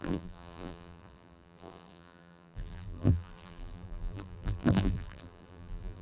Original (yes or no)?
no